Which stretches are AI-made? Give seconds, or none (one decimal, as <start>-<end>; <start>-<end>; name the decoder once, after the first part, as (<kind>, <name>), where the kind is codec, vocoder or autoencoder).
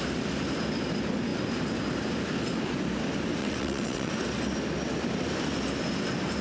3.4-4.1 (vocoder, WaveNeXt)